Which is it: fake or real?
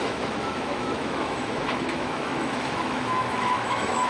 fake